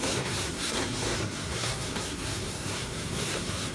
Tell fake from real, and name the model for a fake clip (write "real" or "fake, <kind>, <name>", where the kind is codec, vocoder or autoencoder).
fake, codec, SNAC